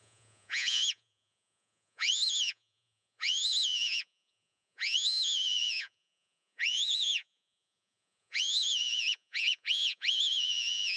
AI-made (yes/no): yes